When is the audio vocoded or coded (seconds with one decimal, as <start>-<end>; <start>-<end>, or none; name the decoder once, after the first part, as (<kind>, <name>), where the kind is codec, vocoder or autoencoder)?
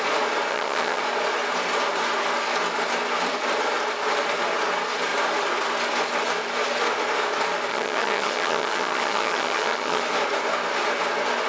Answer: 0.5-1.0 (vocoder, HiFi-GAN); 7.7-10.0